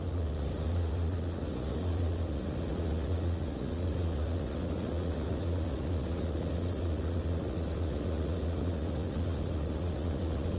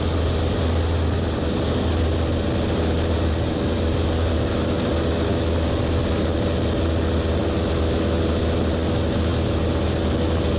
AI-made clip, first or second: first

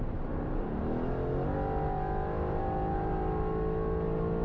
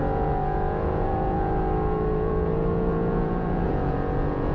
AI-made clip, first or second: second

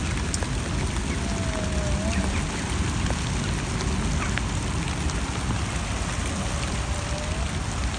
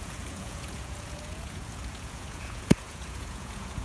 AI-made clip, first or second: second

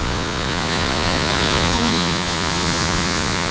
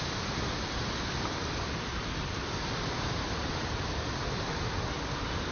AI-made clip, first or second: first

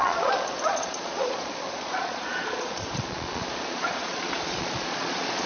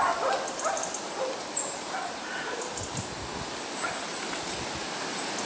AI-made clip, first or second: first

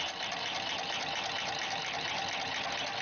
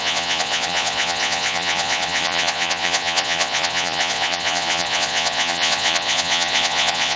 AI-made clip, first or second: second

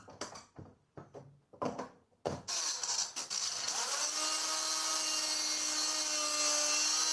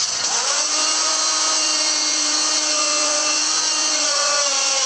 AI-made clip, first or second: second